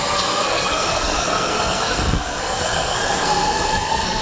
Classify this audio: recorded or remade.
remade